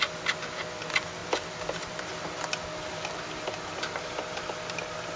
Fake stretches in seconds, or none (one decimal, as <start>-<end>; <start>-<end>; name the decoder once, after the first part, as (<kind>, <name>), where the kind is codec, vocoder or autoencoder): none

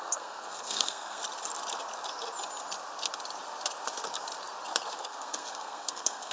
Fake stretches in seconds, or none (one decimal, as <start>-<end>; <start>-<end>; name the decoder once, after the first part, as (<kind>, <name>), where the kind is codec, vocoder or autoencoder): 0.0-1.2 (codec, SNAC); 5.0-6.3